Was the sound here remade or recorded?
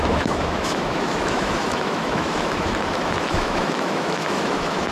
remade